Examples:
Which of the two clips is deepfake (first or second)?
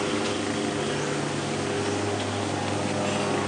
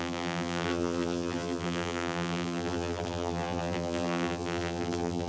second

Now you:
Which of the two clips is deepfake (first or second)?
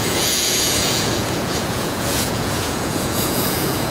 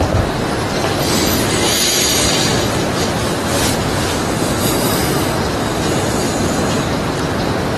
first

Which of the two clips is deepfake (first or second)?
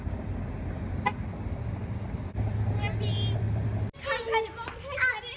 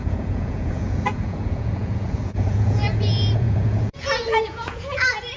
second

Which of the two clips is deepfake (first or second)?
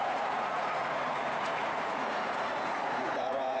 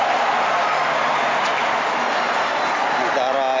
first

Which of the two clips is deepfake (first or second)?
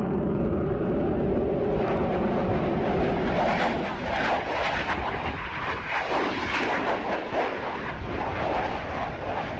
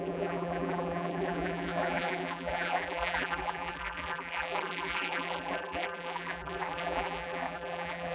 second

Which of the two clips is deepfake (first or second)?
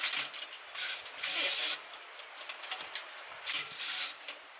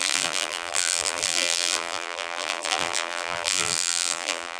second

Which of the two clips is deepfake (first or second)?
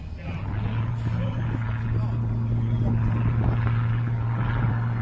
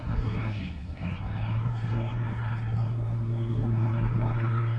second